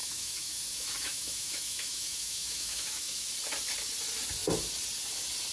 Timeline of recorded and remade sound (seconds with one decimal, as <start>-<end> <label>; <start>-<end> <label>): 0.0-3.3 remade; 3.3-5.5 recorded